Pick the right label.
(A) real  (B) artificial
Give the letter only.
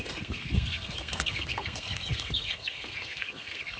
B